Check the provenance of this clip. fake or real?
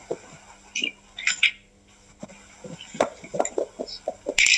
real